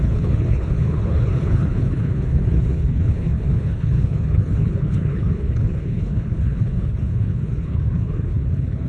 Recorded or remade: remade